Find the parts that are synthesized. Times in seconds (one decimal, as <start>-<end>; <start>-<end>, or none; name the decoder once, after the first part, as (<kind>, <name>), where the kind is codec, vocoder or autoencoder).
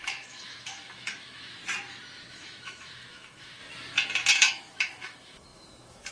0.0-1.6 (autoencoder, DAC-VAE); 2.3-3.6; 4.3-6.1